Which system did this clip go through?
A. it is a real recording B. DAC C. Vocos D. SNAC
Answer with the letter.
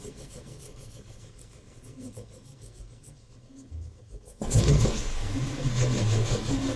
D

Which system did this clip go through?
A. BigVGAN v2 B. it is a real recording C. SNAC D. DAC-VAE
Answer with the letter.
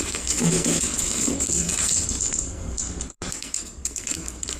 C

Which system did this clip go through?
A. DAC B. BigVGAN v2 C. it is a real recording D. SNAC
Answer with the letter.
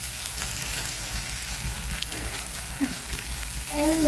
D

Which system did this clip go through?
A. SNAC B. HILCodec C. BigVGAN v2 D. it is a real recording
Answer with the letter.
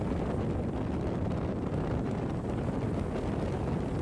D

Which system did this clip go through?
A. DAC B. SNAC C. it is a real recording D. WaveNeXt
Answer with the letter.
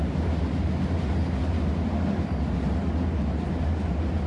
C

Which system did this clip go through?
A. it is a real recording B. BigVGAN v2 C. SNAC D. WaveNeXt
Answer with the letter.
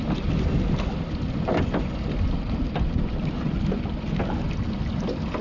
A